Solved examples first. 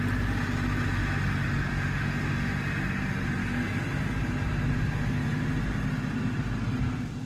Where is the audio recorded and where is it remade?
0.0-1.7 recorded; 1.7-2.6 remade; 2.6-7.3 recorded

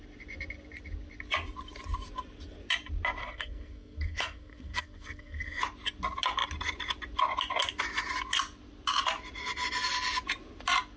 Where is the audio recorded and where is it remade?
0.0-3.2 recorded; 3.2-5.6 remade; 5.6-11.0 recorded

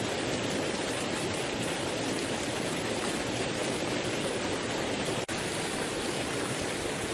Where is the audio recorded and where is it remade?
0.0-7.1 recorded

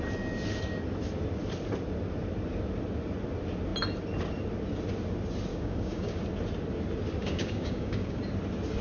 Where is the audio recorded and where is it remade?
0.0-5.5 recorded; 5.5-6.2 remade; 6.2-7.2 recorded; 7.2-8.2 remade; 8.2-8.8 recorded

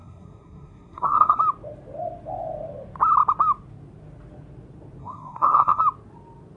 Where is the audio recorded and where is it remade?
0.0-1.4 remade; 1.4-5.0 recorded; 5.0-5.8 remade; 5.8-6.6 recorded

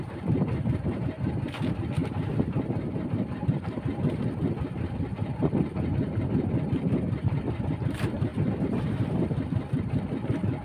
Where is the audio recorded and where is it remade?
0.0-10.6 remade